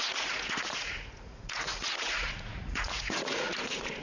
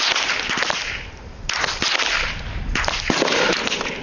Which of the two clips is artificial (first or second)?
first